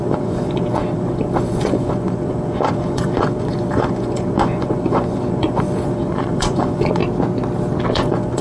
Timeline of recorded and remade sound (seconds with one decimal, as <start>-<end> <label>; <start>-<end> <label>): 0.0-7.0 remade; 7.0-7.9 recorded; 7.9-8.4 remade